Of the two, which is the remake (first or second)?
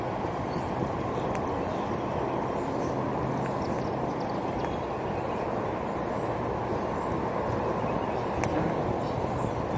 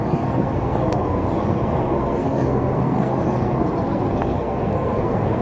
second